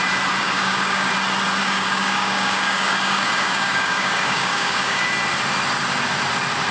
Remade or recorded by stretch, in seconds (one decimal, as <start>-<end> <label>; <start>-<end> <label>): 0.0-0.4 recorded; 0.4-1.1 remade; 1.1-1.6 recorded; 1.6-5.1 remade; 5.1-6.7 recorded